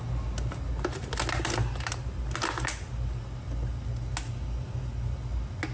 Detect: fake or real real